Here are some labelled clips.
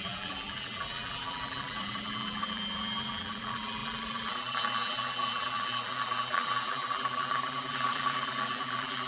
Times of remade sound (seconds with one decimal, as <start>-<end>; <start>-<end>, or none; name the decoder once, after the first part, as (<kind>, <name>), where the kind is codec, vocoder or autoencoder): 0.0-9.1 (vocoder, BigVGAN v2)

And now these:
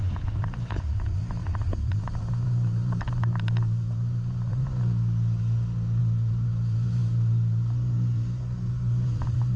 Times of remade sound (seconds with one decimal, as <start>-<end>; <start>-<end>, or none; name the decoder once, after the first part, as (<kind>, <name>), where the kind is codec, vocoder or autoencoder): 0.0-4.6 (vocoder, BigVGAN v2); 6.0-9.6

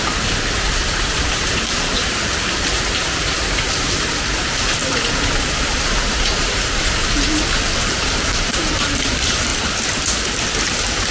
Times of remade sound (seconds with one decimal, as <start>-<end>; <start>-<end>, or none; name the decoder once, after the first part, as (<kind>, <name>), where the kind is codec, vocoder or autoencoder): 0.0-4.8 (vocoder, BigVGAN v2); 5.6-7.0; 7.8-9.5; 10.6-11.1